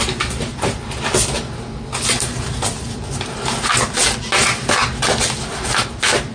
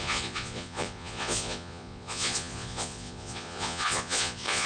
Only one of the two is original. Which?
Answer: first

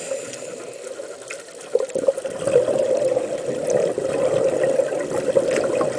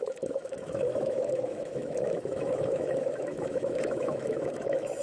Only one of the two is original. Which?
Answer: first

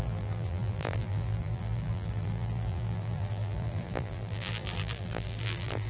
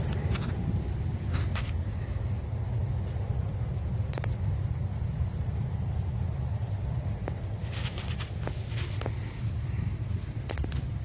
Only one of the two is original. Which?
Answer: second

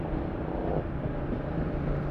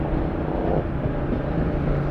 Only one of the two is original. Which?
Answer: second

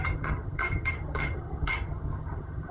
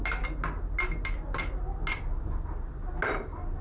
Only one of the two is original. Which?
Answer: second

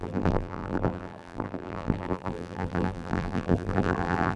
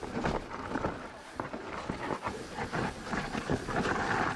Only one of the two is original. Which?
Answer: second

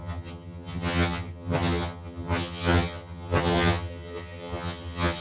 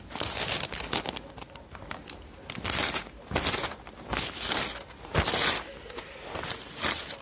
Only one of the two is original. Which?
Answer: second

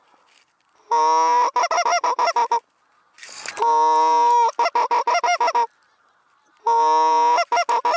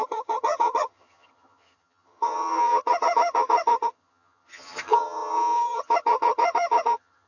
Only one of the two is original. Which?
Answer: first